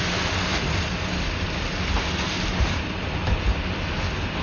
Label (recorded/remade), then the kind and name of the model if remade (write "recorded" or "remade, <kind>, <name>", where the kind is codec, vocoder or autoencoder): recorded